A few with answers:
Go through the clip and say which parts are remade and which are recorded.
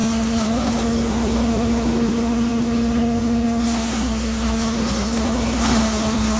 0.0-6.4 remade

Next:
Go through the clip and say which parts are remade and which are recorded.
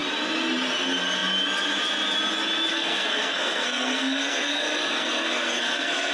0.0-2.7 recorded; 2.7-6.1 remade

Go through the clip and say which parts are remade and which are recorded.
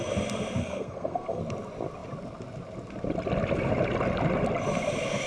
0.0-0.6 recorded; 0.6-1.4 remade; 1.4-5.3 recorded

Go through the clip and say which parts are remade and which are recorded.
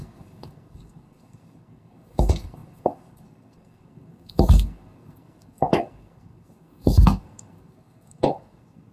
0.0-8.9 remade